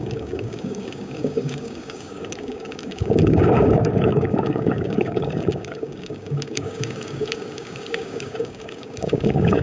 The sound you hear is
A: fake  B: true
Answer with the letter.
A